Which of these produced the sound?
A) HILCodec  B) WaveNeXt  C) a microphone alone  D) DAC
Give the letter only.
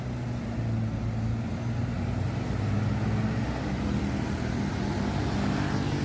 C